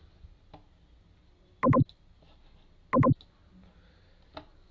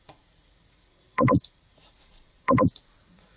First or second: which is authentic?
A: first